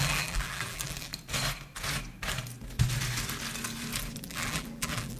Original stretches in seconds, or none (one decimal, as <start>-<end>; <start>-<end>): 1.1-4.2